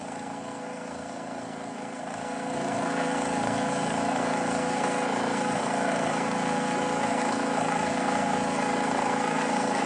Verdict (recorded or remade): remade